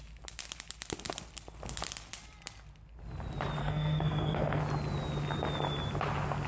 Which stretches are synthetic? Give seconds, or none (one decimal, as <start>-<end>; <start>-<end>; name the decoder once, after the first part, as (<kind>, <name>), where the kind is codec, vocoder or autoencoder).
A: 3.6-4.6 (codec, SNAC)